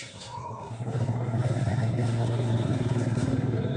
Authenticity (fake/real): fake